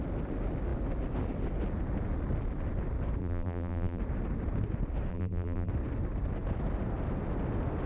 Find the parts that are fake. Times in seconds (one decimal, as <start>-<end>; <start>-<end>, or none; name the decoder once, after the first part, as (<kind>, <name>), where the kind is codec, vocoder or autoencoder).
3.2-4.0 (vocoder, BigVGAN v2); 5.1-5.7